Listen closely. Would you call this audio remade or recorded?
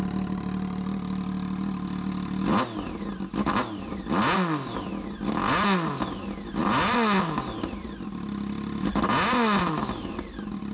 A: recorded